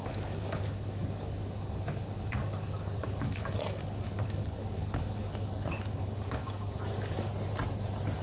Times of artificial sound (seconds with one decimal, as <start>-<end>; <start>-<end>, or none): 0.0-7.3